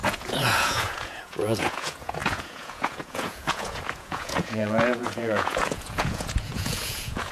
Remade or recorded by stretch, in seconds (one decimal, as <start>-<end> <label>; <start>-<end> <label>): 0.0-7.3 remade